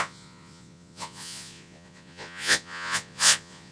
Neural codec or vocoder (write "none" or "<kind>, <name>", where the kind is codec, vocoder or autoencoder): vocoder, Vocos